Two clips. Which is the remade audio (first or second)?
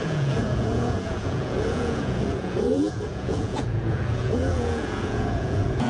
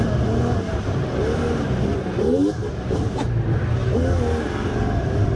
first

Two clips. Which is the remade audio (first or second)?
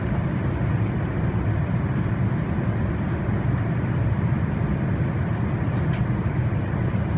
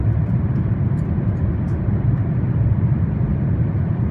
second